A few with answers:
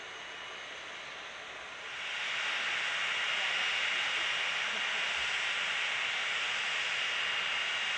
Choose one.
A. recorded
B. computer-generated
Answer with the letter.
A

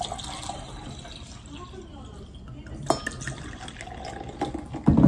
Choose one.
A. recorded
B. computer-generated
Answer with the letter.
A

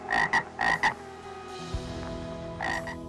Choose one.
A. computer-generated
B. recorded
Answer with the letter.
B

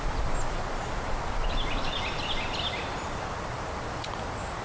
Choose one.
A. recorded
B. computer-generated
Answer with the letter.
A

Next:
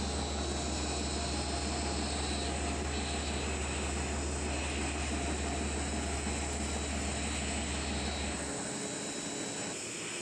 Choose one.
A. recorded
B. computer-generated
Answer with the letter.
A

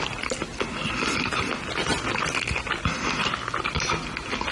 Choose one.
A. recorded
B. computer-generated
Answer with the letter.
A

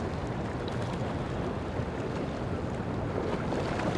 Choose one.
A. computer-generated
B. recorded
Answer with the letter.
B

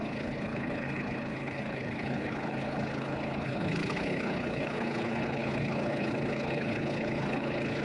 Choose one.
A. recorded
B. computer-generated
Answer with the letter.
B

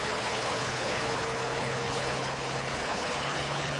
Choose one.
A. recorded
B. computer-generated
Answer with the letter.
B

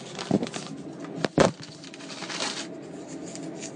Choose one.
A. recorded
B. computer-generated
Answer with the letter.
A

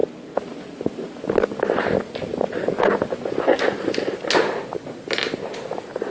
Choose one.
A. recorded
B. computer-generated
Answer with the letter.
A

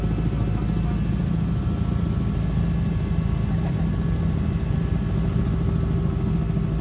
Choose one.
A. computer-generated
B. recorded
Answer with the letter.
B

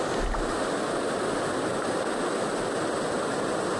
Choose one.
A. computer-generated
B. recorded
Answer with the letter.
B